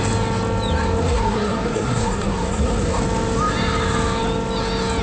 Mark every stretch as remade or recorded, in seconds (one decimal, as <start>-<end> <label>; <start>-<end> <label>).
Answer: 0.0-1.0 recorded; 1.0-3.0 remade; 3.0-5.0 recorded